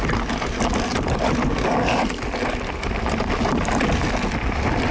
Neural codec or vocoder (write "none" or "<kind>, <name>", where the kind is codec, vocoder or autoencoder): none